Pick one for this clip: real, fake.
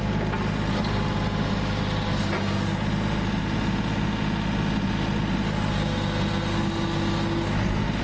real